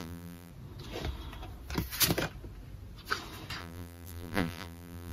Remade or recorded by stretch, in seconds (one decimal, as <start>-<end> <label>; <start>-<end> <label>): 0.0-0.5 remade; 0.5-3.6 recorded; 3.6-5.1 remade